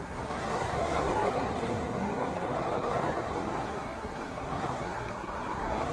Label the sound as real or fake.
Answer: fake